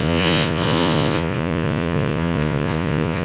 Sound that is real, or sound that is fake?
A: fake